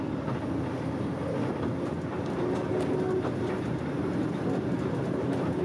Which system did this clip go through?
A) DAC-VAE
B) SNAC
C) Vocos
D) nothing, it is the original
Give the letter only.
D